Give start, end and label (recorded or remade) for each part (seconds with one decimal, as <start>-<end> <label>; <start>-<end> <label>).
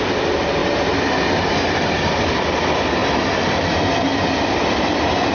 0.0-0.6 remade; 0.6-1.6 recorded; 1.6-3.0 remade; 3.0-4.0 recorded; 4.0-5.3 remade